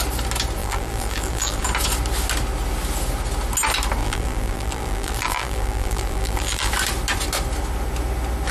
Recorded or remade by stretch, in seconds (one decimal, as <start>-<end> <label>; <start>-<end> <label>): 0.0-0.6 recorded; 0.6-1.6 remade; 1.6-4.0 recorded; 4.0-6.7 remade; 6.7-8.5 recorded